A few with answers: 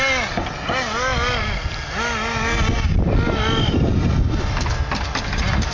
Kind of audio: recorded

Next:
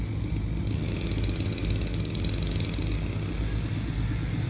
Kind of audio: recorded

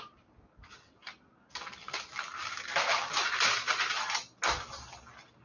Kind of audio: recorded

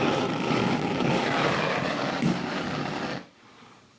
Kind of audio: remade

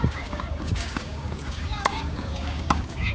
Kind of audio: remade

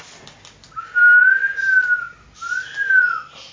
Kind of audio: recorded